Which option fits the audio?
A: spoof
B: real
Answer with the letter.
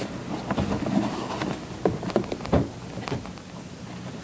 B